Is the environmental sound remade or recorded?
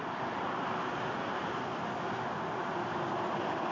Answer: recorded